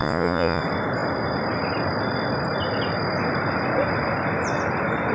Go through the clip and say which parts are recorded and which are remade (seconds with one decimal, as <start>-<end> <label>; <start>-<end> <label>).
0.0-0.6 remade; 0.6-5.1 recorded